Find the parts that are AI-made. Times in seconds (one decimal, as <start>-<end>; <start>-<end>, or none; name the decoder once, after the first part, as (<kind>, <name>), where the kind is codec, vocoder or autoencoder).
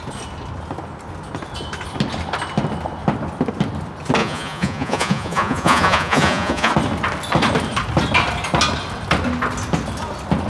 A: 4.2-6.7 (vocoder, Vocos)